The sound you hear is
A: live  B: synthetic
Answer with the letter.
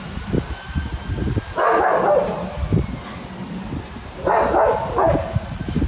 A